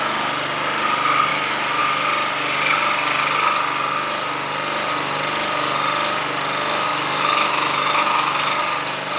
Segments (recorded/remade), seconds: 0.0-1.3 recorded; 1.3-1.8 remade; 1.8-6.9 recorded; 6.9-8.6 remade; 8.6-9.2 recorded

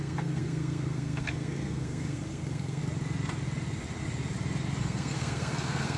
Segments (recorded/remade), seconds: 0.0-2.8 remade; 2.8-4.8 recorded; 4.8-6.0 remade